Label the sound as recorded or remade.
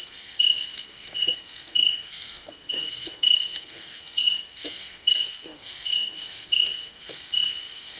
remade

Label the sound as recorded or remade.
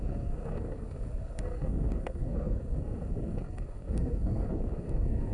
remade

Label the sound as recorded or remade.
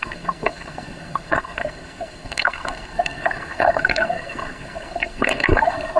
remade